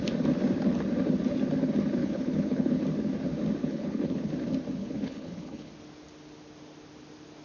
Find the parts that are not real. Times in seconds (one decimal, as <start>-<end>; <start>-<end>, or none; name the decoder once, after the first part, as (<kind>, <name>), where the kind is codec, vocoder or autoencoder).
2.0-2.8 (codec, HILCodec); 3.6-4.3; 4.8-5.7

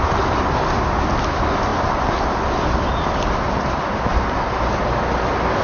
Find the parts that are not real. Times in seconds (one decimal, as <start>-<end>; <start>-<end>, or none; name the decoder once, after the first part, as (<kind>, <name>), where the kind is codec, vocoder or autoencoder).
none